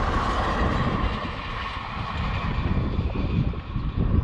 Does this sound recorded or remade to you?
recorded